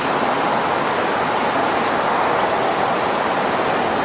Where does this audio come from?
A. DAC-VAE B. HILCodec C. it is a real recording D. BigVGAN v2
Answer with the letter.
C